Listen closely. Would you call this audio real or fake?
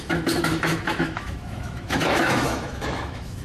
fake